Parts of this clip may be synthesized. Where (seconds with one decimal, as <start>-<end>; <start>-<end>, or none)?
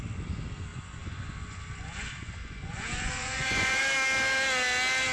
0.7-3.8